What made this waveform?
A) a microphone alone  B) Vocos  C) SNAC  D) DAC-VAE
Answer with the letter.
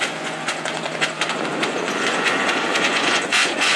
B